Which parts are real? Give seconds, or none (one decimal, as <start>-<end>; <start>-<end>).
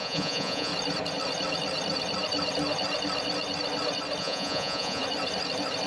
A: 0.7-4.2; 5.0-5.9